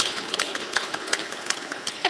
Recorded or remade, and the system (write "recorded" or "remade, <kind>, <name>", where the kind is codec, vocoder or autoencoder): remade, codec, HILCodec